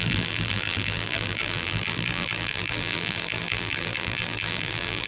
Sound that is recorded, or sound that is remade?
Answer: remade